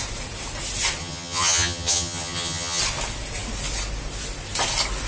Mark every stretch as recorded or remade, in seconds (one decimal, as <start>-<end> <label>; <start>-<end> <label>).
0.0-1.0 recorded; 1.0-2.8 remade; 2.8-5.1 recorded